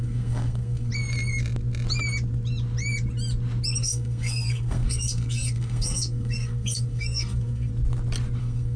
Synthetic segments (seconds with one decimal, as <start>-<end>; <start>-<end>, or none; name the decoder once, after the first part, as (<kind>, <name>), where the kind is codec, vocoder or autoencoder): 0.0-0.9 (codec, SNAC); 3.8-7.7; 8.4-8.8